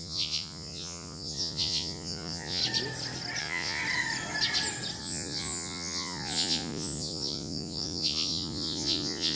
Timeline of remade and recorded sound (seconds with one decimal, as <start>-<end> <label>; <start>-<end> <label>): 0.0-2.6 remade; 2.6-3.4 recorded; 3.4-3.8 remade; 3.8-5.0 recorded; 5.0-9.4 remade